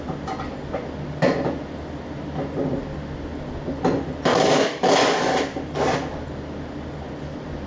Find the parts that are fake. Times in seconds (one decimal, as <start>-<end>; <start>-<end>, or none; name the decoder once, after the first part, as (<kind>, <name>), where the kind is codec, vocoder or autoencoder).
4.3-5.3 (codec, DAC)